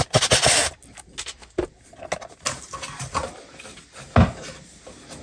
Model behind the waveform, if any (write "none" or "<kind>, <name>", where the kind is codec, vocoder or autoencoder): none